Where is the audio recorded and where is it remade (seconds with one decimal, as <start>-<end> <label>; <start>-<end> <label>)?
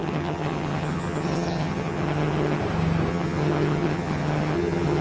0.0-2.6 remade; 2.6-3.1 recorded; 3.1-5.0 remade